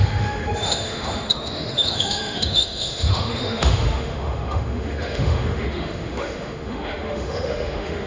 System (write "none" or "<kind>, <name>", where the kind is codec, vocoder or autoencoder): autoencoder, DAC-VAE